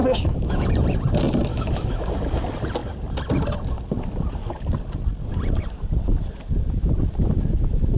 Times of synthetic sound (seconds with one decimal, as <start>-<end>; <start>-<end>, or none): 0.0-0.7; 1.5-2.1